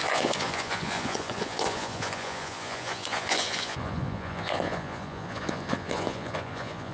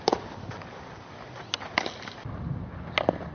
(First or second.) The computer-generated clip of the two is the first